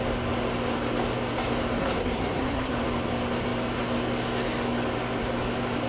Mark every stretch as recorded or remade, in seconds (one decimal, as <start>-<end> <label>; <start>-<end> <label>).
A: 0.0-1.8 recorded; 1.8-2.7 remade; 2.7-5.9 recorded